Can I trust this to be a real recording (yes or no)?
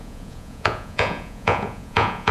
no